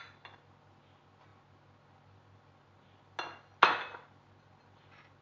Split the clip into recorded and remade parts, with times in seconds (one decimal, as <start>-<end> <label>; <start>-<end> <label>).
0.0-5.2 recorded